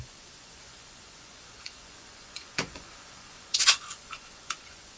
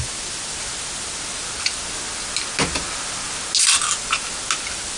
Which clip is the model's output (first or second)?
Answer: first